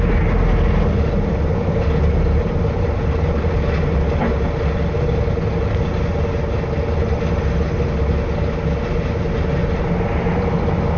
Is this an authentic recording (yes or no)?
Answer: yes